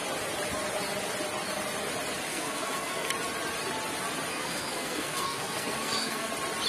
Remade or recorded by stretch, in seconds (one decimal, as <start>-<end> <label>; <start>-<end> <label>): 0.0-2.3 recorded; 2.3-3.1 remade; 3.1-4.3 recorded; 4.3-6.3 remade; 6.3-6.7 recorded